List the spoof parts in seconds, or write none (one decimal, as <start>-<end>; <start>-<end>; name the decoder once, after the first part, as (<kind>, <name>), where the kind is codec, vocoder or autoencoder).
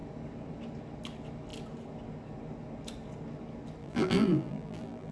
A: 3.8-5.1 (vocoder, BigVGAN v2)